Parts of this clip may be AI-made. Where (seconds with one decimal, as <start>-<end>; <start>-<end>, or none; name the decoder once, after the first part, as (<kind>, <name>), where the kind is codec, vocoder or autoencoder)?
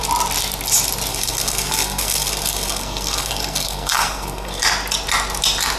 1.1-4.6 (codec, SNAC)